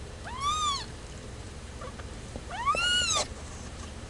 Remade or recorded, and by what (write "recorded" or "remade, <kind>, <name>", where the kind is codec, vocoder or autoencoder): remade, vocoder, BigVGAN v2